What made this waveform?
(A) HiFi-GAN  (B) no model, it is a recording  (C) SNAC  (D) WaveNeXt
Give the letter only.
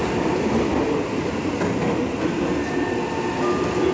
B